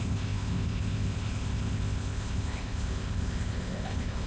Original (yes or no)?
no